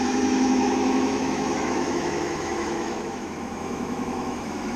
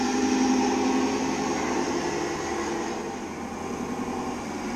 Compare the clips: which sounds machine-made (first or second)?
first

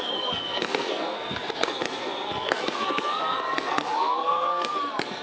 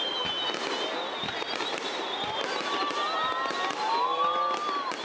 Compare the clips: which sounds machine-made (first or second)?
first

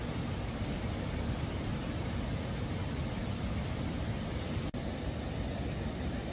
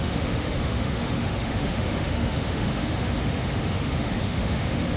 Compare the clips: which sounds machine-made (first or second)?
second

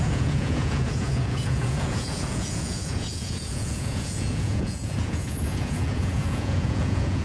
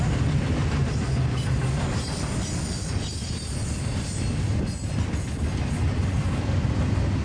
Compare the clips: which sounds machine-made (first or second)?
first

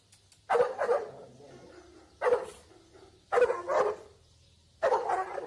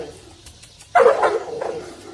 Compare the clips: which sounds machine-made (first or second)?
second